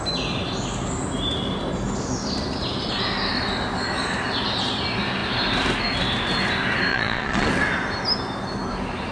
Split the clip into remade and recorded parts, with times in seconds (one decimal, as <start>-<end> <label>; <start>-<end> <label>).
0.0-6.9 recorded; 6.9-7.5 remade; 7.5-9.1 recorded